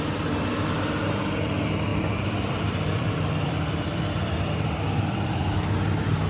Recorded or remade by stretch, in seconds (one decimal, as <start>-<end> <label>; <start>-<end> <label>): 0.0-1.9 recorded; 1.9-5.7 remade; 5.7-6.3 recorded